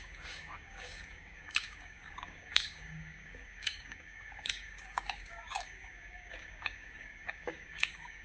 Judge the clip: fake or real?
fake